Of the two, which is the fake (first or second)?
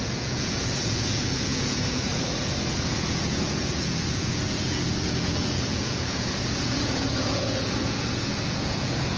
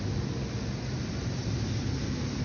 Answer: first